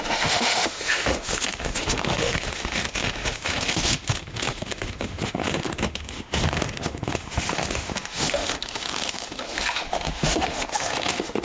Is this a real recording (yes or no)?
no